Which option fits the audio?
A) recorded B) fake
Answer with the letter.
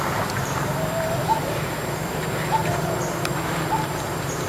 B